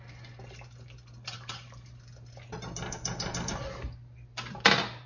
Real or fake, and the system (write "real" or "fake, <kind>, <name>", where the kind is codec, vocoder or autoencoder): real